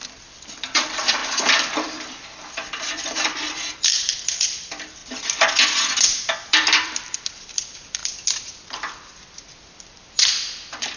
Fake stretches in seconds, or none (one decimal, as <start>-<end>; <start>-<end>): 0.0-5.0; 6.2-8.0; 8.6-11.0